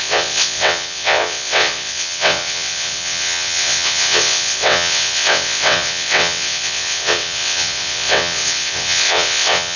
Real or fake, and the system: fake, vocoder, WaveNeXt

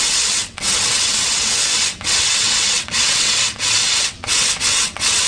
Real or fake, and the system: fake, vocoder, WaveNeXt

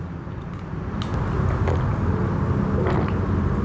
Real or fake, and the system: real